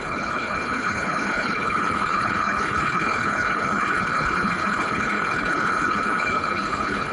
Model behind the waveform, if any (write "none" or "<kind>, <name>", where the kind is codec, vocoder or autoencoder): codec, HILCodec